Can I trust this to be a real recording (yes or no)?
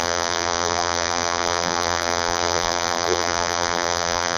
no